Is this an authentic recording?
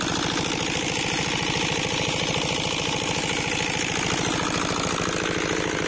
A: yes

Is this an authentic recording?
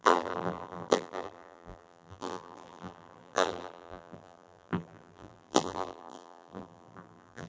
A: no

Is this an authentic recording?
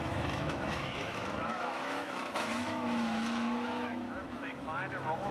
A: no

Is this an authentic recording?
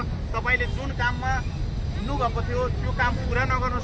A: yes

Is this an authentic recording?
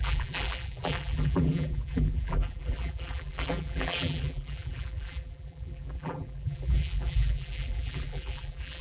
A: no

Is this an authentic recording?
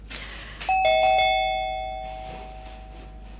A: yes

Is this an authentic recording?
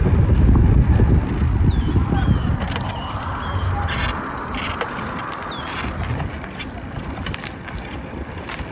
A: yes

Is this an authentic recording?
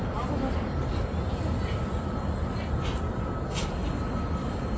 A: yes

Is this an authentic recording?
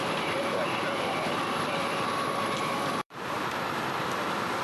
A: no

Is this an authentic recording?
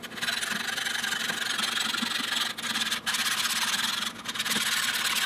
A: yes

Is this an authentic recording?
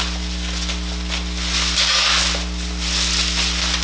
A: yes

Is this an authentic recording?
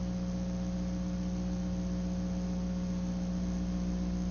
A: yes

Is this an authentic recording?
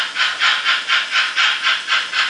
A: yes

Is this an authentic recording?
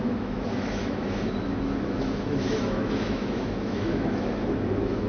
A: no